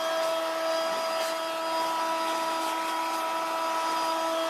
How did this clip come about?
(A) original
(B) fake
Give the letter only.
A